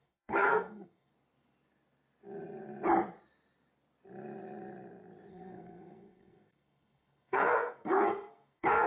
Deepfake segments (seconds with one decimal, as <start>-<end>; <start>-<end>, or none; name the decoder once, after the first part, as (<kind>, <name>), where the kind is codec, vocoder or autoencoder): 0.0-1.1 (codec, SNAC); 5.3-8.9